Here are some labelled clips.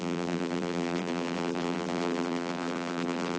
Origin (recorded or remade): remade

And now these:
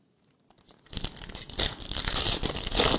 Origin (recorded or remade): recorded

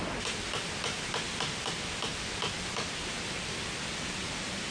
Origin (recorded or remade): recorded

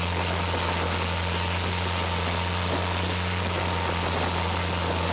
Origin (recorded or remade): recorded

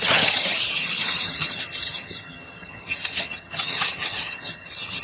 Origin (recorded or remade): remade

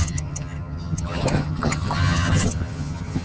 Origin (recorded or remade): remade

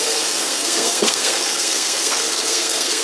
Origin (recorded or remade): remade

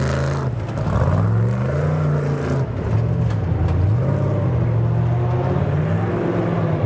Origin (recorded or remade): recorded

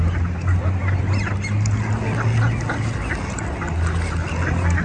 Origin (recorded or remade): recorded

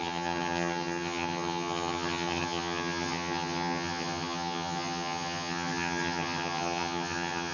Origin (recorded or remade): remade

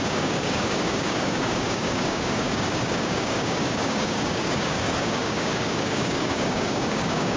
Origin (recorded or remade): remade